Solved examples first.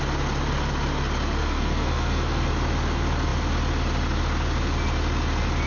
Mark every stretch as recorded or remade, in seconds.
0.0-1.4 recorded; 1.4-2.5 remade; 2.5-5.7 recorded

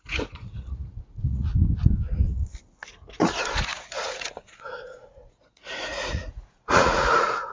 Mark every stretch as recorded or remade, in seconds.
0.0-1.5 remade; 1.5-2.9 recorded; 2.9-7.5 remade

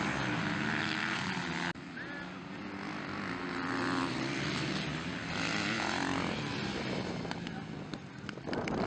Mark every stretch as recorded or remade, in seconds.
0.0-8.9 recorded